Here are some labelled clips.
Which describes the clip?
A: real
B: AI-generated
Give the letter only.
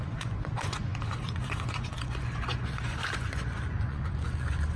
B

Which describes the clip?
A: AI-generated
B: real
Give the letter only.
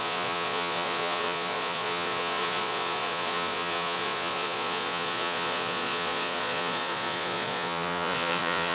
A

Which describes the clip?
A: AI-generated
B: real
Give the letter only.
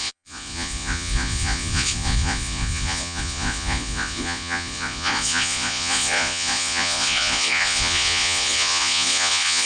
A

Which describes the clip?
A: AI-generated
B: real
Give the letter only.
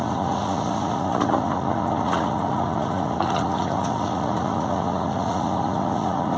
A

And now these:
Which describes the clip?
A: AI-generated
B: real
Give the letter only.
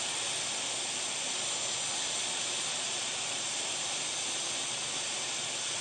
B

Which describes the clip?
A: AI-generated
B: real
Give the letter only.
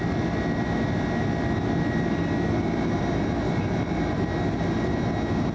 B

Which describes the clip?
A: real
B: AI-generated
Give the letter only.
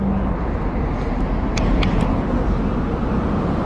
A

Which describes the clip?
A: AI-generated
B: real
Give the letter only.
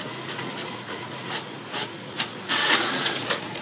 A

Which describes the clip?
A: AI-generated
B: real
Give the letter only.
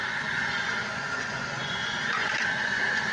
A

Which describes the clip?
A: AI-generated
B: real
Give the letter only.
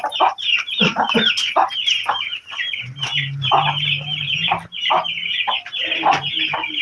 B